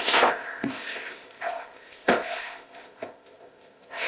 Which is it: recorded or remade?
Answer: remade